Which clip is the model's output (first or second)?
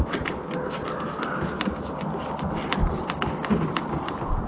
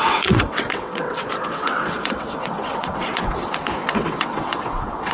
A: second